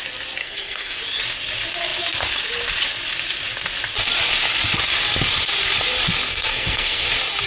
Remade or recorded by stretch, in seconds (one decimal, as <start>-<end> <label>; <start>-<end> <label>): 0.0-0.4 recorded; 0.4-1.0 remade; 1.0-6.3 recorded; 6.3-7.1 remade; 7.1-7.5 recorded